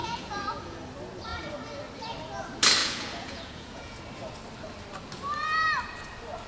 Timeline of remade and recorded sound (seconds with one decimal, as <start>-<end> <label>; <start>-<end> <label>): 0.0-0.8 remade; 0.8-2.8 recorded; 2.8-4.0 remade; 4.0-6.5 recorded